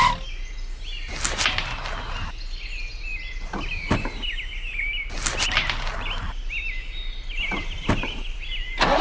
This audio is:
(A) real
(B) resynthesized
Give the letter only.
A